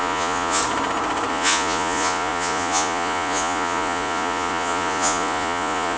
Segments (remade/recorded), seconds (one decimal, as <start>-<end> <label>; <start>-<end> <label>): 0.0-0.6 remade; 0.6-1.3 recorded; 1.3-6.0 remade